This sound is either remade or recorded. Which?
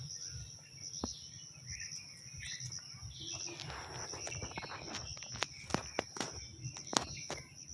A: recorded